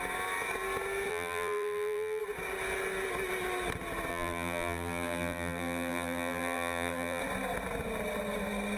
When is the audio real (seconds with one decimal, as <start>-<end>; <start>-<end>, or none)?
0.0-1.1; 2.2-4.1; 7.2-8.8